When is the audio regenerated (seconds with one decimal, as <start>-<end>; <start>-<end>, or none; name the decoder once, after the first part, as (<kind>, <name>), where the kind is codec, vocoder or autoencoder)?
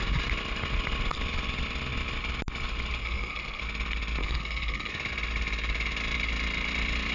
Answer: 3.0-3.6 (codec, SNAC); 4.2-4.9